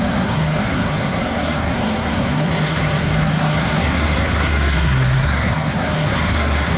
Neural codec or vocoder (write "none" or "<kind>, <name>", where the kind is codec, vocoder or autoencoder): codec, SNAC